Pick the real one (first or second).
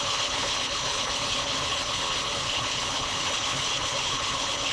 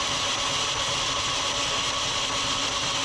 second